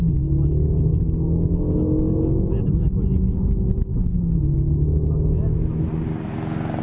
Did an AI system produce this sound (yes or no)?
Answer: no